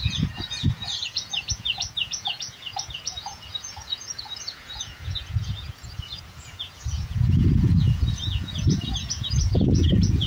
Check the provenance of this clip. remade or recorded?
remade